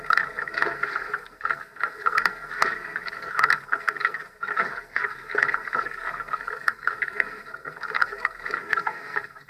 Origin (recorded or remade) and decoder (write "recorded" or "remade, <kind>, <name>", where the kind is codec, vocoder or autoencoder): remade, codec, SNAC